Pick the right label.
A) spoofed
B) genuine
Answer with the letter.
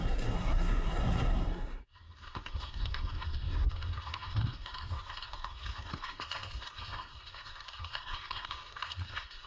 A